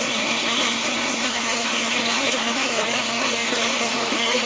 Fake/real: fake